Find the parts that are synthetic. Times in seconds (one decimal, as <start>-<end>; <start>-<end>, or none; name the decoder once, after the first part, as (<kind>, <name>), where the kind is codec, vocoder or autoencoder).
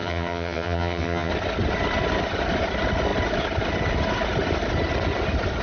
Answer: 0.0-1.3 (vocoder, HiFi-GAN)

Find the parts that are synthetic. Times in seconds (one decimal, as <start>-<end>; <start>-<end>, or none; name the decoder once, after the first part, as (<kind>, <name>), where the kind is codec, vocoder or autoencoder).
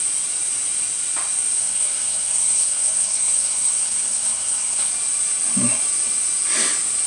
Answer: 1.6-4.9 (codec, SNAC)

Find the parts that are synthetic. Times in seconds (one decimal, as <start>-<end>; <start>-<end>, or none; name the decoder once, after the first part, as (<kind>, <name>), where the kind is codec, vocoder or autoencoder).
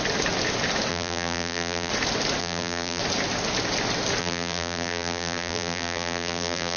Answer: 0.9-1.9 (vocoder, BigVGAN v2); 2.4-3.0; 4.2-6.8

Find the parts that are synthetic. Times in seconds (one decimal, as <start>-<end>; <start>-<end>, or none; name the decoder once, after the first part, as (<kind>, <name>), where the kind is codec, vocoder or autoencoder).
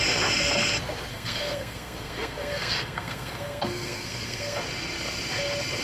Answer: 1.1-4.6 (codec, SNAC)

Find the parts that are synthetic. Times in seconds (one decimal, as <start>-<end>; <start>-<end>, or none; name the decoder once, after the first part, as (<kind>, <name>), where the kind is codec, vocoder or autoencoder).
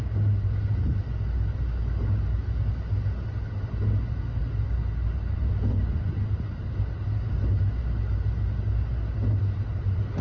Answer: none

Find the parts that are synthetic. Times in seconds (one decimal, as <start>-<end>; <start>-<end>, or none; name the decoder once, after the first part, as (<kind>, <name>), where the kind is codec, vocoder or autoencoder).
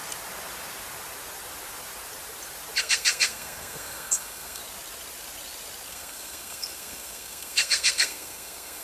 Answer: 2.8-4.6 (codec, SNAC); 5.9-8.8